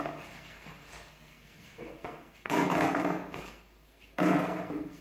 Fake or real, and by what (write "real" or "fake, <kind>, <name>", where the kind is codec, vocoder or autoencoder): fake, codec, SNAC